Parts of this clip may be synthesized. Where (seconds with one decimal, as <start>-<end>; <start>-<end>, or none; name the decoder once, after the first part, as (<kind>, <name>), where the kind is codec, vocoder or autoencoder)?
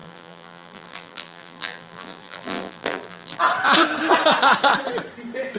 0.0-3.4 (vocoder, BigVGAN v2)